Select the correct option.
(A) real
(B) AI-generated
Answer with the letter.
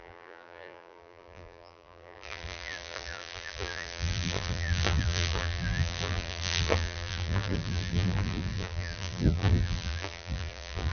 B